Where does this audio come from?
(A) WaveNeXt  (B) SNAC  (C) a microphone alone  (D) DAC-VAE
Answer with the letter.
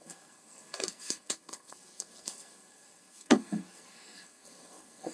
B